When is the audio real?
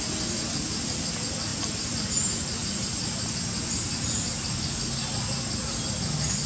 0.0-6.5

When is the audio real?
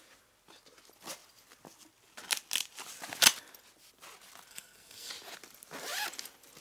0.0-4.5; 5.1-6.6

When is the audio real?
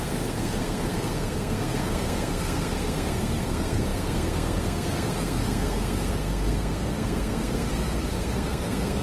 none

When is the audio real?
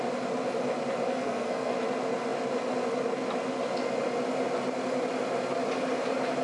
0.0-1.1; 1.7-6.4